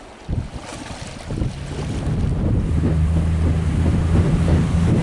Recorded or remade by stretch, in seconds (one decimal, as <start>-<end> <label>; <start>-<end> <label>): 0.0-5.0 recorded